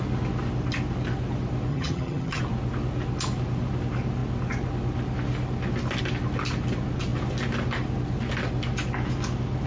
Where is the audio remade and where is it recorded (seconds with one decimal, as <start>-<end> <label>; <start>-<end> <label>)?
0.0-1.7 recorded; 1.7-2.4 remade; 2.4-9.7 recorded